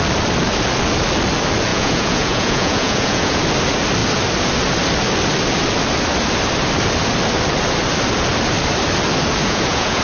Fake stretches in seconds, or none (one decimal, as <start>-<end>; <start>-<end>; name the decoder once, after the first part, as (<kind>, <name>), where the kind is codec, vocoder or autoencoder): 1.7-3.4 (vocoder, Vocos); 9.4-10.0